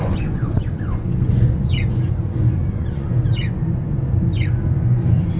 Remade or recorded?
remade